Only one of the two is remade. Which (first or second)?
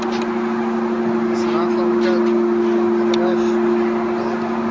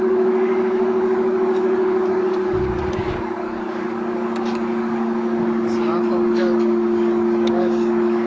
second